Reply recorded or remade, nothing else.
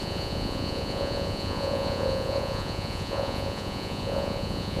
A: remade